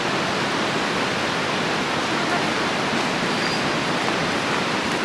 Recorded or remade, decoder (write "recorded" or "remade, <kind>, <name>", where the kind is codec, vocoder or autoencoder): recorded